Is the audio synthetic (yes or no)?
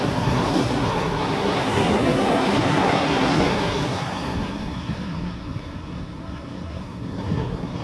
yes